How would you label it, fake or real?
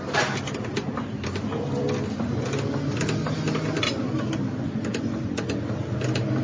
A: real